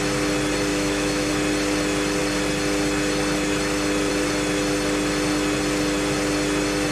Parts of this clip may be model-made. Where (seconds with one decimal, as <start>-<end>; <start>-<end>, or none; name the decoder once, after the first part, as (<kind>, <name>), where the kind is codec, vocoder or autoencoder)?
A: 0.7-1.3 (autoencoder, DAC-VAE)